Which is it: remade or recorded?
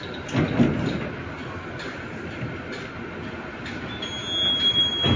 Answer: recorded